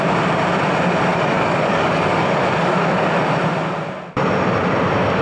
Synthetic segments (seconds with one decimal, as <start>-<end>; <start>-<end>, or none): 1.1-3.2